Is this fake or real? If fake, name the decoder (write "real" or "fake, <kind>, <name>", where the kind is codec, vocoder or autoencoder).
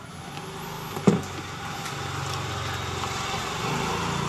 real